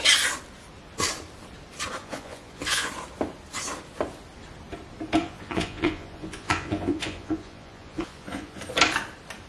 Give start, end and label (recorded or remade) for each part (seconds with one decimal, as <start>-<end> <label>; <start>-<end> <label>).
0.0-2.0 recorded; 2.0-2.9 remade; 2.9-5.2 recorded; 5.2-8.6 remade; 8.6-9.5 recorded